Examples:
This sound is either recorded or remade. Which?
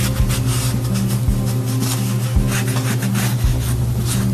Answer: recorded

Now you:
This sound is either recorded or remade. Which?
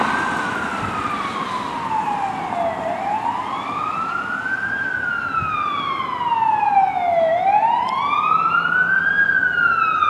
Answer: recorded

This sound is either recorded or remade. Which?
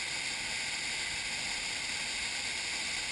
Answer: recorded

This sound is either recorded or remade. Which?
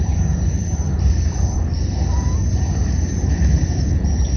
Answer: remade